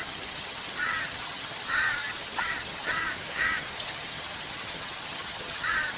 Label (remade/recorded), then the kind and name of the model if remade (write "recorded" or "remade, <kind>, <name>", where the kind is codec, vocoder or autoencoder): remade, vocoder, HiFi-GAN